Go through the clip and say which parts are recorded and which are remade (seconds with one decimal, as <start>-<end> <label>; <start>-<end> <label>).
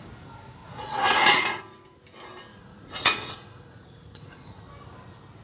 0.0-0.6 recorded; 0.6-1.6 remade; 1.6-2.5 recorded; 2.5-4.6 remade; 4.6-5.4 recorded